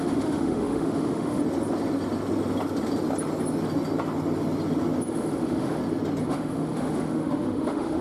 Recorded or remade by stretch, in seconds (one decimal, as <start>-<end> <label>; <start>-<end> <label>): 0.0-1.4 remade; 1.4-5.1 recorded; 5.1-5.8 remade; 5.8-6.3 recorded; 6.3-8.0 remade